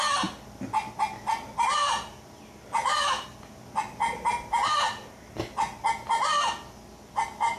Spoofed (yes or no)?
no